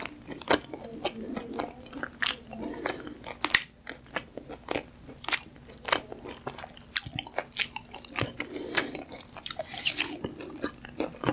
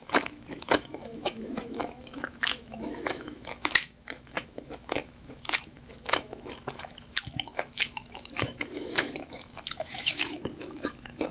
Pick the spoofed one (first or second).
second